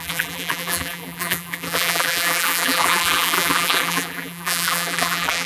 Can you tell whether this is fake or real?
fake